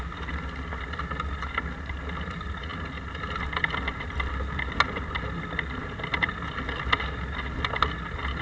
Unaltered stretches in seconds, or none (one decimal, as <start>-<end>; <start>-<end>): 0.0-8.4